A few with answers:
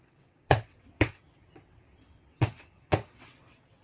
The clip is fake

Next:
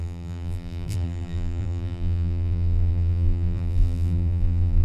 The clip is fake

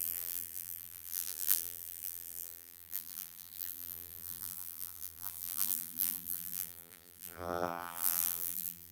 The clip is fake